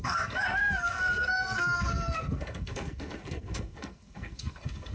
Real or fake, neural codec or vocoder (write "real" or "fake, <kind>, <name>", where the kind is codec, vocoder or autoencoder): fake, codec, SNAC